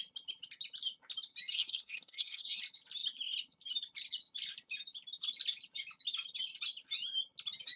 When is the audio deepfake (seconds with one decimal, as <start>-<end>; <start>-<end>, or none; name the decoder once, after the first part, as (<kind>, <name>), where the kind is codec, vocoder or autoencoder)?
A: 1.5-2.6 (codec, SNAC)